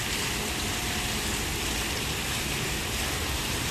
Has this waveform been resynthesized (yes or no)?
no